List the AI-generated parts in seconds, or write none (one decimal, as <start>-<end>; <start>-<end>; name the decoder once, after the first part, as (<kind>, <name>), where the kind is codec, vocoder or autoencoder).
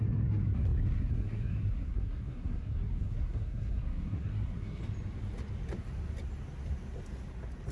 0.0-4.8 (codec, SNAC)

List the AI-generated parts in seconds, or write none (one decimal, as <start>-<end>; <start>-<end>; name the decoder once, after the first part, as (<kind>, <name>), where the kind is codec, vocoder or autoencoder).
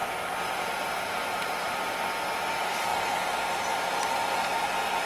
0.0-2.1 (vocoder, BigVGAN v2)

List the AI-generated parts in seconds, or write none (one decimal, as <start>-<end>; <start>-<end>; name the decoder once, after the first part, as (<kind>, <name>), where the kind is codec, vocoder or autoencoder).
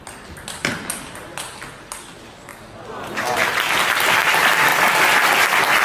4.7-5.3 (vocoder, BigVGAN v2)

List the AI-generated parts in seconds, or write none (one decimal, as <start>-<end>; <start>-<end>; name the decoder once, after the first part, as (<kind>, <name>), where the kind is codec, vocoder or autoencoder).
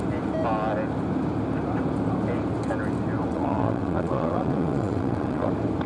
3.3-5.5 (vocoder, WaveNeXt)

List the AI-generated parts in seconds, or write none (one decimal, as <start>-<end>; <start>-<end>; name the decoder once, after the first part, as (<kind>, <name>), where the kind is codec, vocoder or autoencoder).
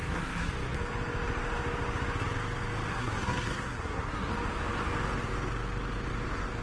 0.0-0.5 (codec, SNAC); 2.9-4.3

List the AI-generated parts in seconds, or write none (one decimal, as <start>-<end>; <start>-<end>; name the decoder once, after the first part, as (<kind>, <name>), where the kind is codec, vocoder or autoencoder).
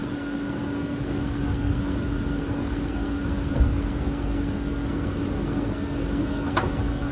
0.0-7.1 (codec, SNAC)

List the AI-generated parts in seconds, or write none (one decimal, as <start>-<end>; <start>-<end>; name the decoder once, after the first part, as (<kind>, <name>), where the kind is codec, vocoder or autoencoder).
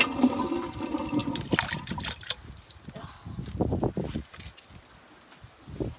none